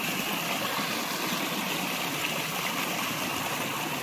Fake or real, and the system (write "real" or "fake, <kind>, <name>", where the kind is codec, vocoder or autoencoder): real